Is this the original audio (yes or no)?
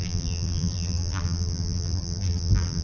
no